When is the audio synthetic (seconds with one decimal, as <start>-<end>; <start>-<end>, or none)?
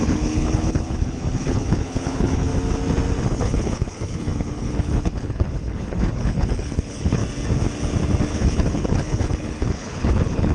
0.0-2.5; 3.3-7.2; 8.3-10.5